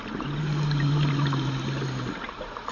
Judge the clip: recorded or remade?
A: recorded